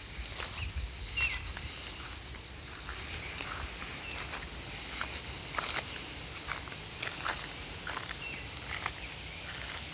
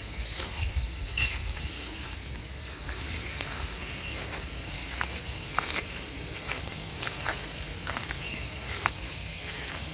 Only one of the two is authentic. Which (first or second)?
first